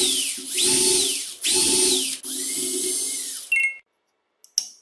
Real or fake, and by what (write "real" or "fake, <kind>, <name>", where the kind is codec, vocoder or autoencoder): real